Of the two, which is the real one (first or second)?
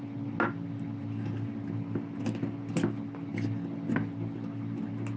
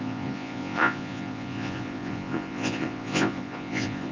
first